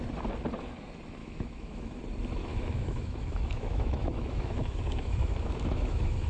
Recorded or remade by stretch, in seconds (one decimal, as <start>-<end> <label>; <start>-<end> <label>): 0.0-1.2 recorded; 1.2-2.0 remade; 2.0-2.5 recorded; 2.5-6.3 remade